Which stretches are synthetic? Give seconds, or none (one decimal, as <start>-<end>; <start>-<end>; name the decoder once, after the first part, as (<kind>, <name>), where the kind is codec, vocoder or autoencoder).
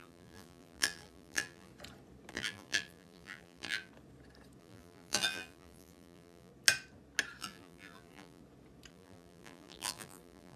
0.0-1.7 (vocoder, BigVGAN v2); 2.3-3.9; 4.6-6.5; 7.4-8.4; 8.9-10.6